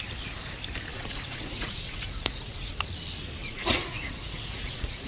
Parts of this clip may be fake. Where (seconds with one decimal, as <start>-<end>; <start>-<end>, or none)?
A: 0.9-2.7; 3.4-5.1